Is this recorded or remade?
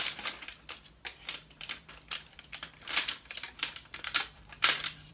remade